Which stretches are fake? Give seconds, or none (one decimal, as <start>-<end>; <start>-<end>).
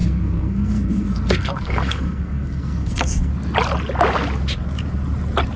0.0-3.3